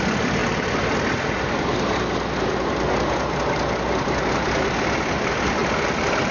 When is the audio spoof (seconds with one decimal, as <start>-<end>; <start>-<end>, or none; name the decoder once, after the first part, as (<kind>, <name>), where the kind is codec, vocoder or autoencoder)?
0.0-0.4 (vocoder, BigVGAN v2); 4.2-5.6